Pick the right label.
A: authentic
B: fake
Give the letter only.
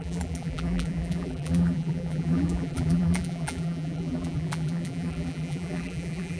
B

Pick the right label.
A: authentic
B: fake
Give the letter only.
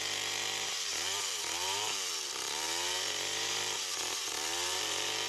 B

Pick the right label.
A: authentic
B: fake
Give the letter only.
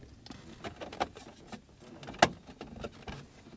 A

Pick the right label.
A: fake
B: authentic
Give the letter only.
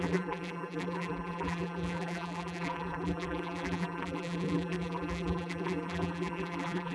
A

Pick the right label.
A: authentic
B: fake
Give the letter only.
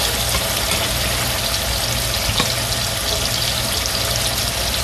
A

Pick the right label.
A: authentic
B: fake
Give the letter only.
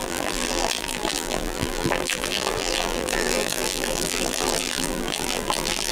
B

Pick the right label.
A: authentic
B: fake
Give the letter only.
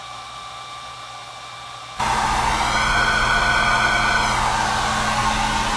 A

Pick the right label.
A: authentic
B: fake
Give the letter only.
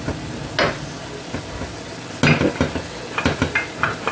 A